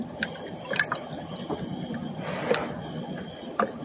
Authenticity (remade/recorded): recorded